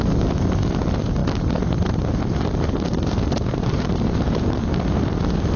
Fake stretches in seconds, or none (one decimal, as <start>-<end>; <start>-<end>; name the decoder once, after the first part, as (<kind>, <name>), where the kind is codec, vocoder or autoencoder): 1.2-4.6 (vocoder, BigVGAN v2)